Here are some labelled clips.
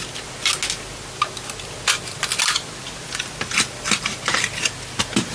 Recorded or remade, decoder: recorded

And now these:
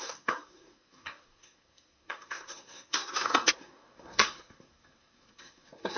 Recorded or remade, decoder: remade, codec, SNAC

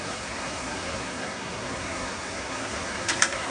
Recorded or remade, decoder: remade, codec, SNAC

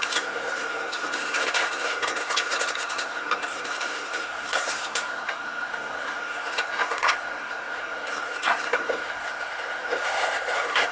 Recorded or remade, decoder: remade, codec, SNAC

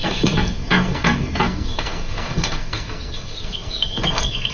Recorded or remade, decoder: remade, codec, SNAC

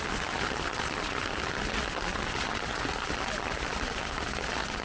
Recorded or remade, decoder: recorded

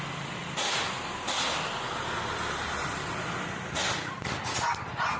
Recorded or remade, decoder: recorded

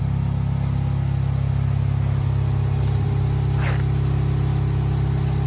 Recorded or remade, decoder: recorded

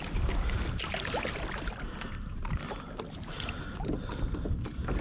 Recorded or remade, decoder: recorded